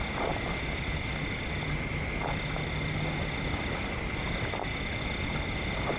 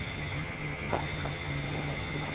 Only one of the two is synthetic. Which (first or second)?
second